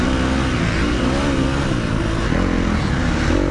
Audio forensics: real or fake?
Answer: real